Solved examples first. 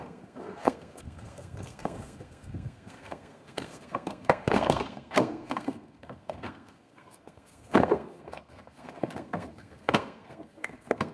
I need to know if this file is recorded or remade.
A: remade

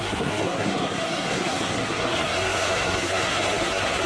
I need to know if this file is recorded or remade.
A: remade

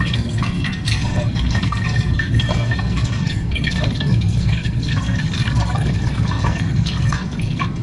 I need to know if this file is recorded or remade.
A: remade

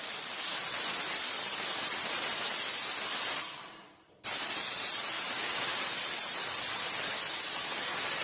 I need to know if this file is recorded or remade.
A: recorded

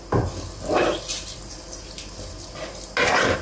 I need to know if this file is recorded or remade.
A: recorded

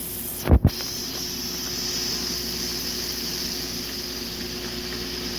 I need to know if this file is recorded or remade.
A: recorded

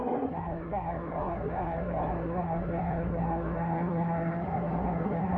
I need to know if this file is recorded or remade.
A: remade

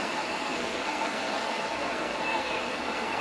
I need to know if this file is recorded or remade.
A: remade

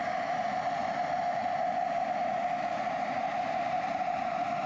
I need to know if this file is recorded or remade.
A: recorded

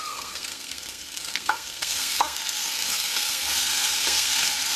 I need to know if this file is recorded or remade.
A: remade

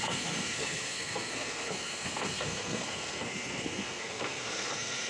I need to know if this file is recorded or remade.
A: remade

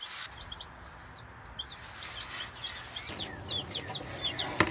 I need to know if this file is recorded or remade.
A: recorded